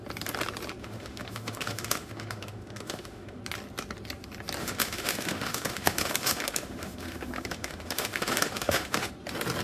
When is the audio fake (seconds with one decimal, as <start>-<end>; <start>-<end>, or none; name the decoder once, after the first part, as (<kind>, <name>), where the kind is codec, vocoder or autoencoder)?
0.8-3.4 (autoencoder, DAC-VAE); 4.6-9.1